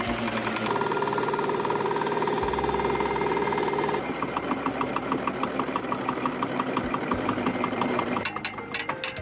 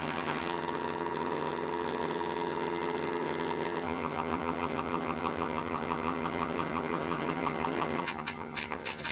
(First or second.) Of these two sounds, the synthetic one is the second